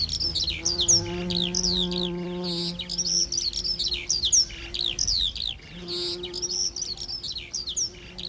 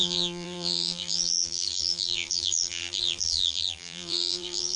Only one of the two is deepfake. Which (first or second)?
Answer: second